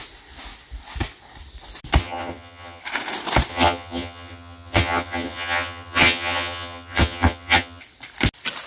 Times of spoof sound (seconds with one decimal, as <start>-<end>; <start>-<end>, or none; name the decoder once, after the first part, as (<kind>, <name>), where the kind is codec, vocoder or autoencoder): 2.0-2.8 (vocoder, HiFi-GAN); 3.5-7.8